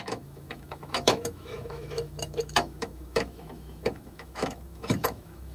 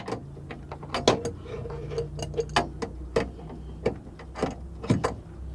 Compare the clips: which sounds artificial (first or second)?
first